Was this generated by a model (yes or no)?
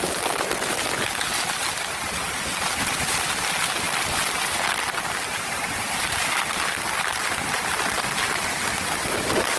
no